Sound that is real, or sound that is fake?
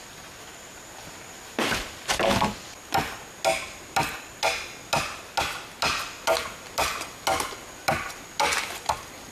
real